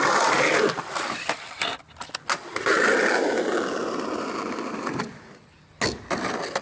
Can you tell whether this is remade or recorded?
recorded